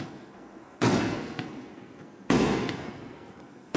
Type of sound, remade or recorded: remade